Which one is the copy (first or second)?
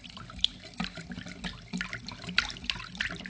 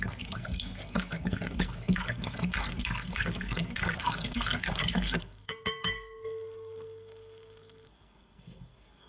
second